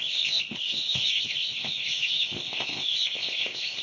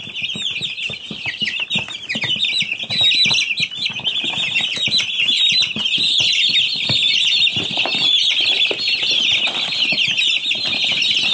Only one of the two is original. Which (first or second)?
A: second